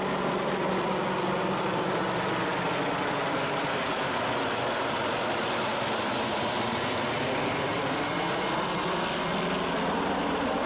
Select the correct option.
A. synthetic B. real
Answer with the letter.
B